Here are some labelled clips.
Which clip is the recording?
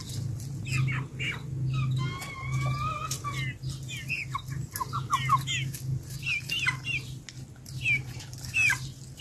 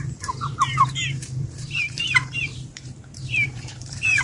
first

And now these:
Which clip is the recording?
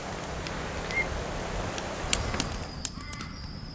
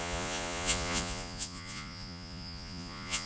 first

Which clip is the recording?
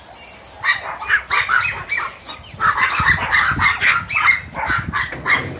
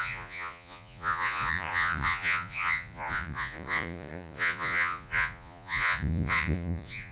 first